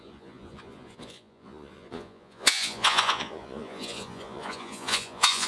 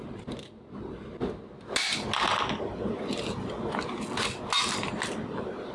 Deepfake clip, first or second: first